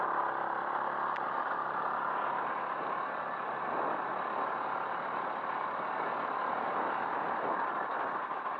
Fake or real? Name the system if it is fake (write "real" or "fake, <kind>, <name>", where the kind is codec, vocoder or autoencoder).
real